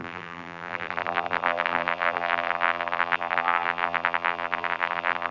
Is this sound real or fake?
fake